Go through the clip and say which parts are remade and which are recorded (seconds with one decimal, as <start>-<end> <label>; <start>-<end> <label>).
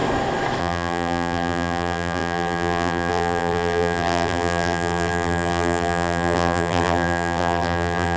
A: 0.0-0.6 recorded; 0.6-8.2 remade